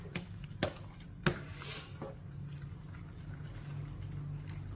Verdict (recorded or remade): recorded